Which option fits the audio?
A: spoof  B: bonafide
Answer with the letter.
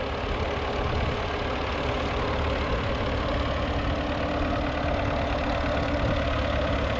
B